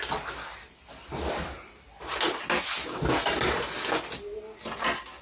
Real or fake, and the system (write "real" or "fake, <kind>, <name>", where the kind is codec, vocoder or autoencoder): real